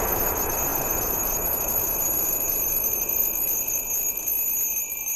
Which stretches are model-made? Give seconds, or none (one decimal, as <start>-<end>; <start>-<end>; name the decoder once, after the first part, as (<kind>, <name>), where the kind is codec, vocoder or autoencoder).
0.0-4.3 (vocoder, Vocos)